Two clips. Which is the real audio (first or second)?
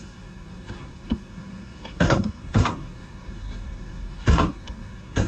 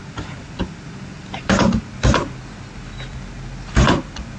second